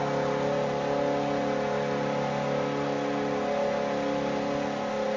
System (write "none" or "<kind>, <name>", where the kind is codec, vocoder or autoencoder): none